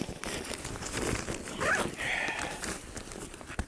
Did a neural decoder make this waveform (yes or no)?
no